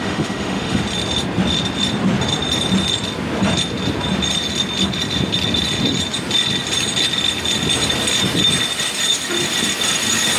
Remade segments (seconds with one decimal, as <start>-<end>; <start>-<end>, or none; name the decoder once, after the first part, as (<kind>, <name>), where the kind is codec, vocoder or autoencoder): 0.0-0.8 (autoencoder, DAC-VAE)